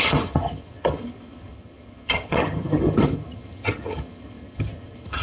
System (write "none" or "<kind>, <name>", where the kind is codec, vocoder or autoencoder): vocoder, HiFi-GAN